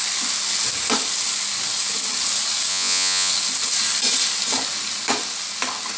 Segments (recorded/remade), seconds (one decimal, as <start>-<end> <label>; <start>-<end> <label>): 0.0-2.7 recorded; 2.7-3.3 remade; 3.3-6.0 recorded